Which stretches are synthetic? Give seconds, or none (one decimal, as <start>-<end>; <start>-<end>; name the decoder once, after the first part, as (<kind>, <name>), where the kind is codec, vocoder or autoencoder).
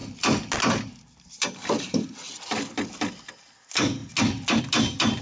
none